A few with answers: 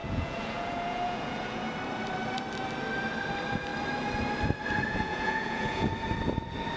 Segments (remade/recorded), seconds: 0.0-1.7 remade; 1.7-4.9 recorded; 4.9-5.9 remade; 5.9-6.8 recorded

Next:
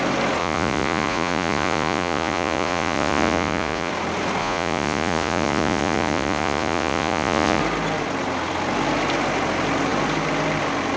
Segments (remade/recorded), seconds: 0.0-0.4 recorded; 0.4-3.9 remade; 3.9-4.4 recorded; 4.4-7.6 remade; 7.6-11.0 recorded

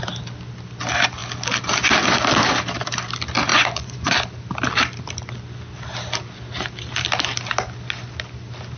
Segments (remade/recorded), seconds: 0.0-3.5 recorded; 3.5-4.1 remade; 4.1-8.8 recorded

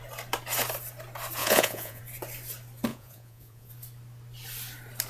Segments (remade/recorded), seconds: 0.0-1.4 recorded; 1.4-2.0 remade; 2.0-2.9 recorded; 2.9-3.7 remade; 3.7-5.1 recorded